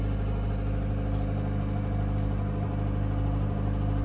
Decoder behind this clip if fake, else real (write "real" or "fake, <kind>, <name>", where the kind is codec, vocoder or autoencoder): real